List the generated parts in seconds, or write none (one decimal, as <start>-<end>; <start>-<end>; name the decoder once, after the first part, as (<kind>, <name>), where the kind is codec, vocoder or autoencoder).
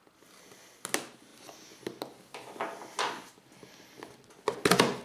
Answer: none